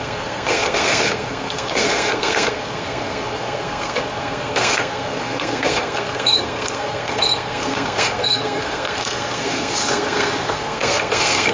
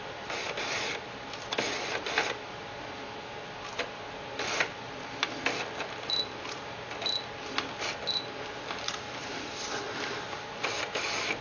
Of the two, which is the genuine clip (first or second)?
second